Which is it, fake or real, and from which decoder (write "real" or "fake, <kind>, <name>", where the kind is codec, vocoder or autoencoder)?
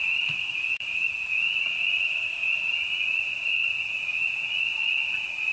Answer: fake, vocoder, Vocos